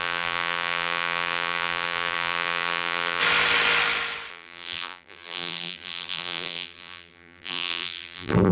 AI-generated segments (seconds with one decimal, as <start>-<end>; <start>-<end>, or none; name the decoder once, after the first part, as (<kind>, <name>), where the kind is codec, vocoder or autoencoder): 0.0-3.2 (vocoder, BigVGAN v2); 4.3-8.5